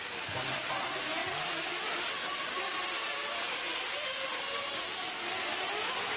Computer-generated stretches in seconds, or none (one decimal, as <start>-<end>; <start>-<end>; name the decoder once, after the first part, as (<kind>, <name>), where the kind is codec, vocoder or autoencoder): none